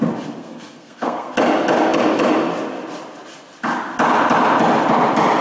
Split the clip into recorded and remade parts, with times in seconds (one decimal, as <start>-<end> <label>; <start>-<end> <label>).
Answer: 0.0-0.4 recorded; 0.4-1.3 remade; 1.3-5.4 recorded